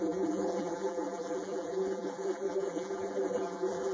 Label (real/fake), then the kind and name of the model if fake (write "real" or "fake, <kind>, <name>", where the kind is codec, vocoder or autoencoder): fake, vocoder, BigVGAN v2